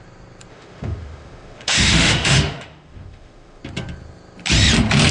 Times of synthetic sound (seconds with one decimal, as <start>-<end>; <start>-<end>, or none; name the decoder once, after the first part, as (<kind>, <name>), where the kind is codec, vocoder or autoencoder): 0.5-3.6 (autoencoder, DAC-VAE)